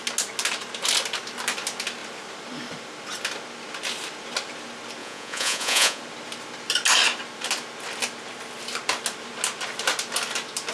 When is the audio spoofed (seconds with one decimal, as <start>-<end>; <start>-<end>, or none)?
5.0-6.0